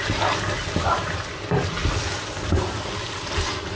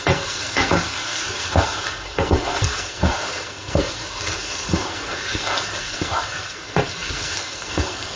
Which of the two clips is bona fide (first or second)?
first